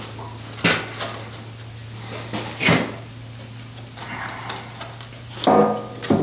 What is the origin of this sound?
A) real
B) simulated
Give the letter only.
A